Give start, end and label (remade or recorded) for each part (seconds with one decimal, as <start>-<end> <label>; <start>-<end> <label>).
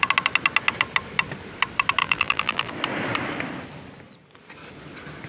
0.0-2.0 recorded; 2.0-2.7 remade; 2.7-5.3 recorded